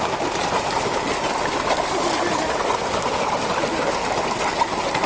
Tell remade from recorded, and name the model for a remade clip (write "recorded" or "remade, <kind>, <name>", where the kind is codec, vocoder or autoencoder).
recorded